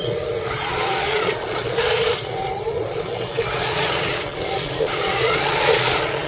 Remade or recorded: remade